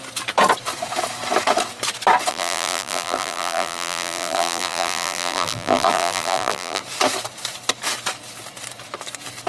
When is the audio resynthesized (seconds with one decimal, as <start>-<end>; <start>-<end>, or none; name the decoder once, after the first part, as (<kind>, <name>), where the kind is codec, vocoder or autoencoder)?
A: 2.3-6.8 (vocoder, BigVGAN v2)